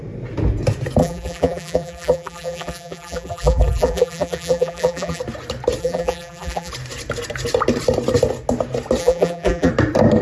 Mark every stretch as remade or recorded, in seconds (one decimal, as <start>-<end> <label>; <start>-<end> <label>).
0.0-1.0 recorded; 1.0-5.2 remade; 5.2-5.8 recorded; 5.8-6.7 remade; 6.7-9.0 recorded; 9.0-9.7 remade; 9.7-10.2 recorded